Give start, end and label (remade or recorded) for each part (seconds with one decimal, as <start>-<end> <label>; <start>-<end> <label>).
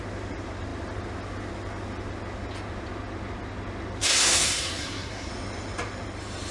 0.0-4.0 recorded; 4.0-5.3 remade; 5.3-6.5 recorded